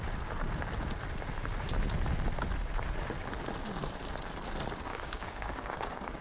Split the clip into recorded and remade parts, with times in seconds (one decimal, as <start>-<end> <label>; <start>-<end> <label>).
0.0-4.9 recorded; 4.9-6.2 remade